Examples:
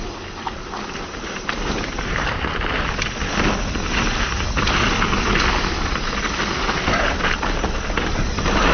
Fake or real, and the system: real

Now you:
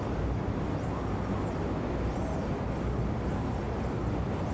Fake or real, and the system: real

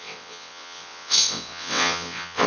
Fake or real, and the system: fake, vocoder, WaveNeXt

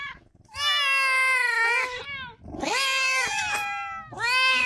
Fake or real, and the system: real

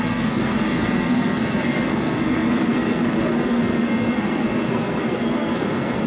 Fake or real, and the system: fake, codec, SNAC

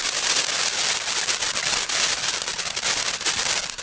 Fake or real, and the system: real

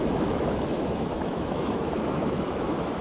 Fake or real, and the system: fake, autoencoder, DAC-VAE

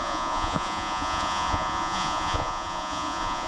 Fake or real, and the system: fake, vocoder, Vocos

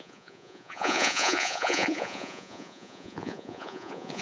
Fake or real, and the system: fake, vocoder, Vocos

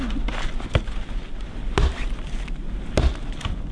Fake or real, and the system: real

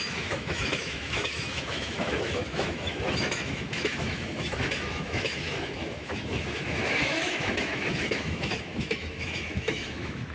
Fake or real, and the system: fake, autoencoder, DAC-VAE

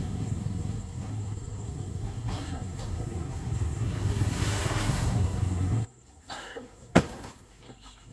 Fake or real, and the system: fake, codec, SNAC